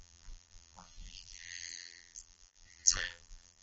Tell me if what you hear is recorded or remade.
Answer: remade